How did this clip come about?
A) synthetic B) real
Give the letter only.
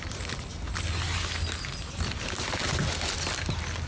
B